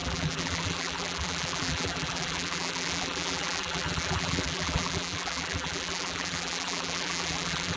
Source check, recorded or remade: remade